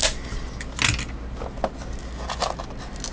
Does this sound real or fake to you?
real